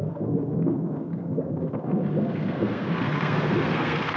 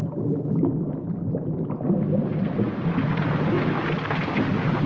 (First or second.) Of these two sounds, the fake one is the first